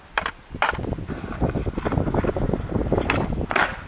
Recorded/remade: recorded